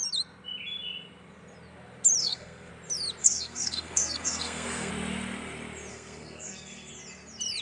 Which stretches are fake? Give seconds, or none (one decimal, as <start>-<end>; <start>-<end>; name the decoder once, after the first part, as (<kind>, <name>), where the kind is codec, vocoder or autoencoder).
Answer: 2.2-2.7 (codec, SNAC); 3.2-4.9; 5.9-6.9